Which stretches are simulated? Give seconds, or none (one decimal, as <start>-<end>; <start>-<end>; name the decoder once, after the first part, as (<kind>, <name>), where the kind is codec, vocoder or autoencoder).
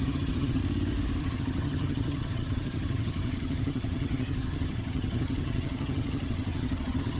0.0-0.6 (vocoder, HiFi-GAN); 1.2-7.2